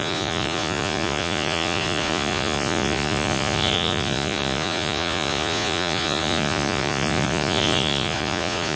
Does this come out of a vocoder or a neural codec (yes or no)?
yes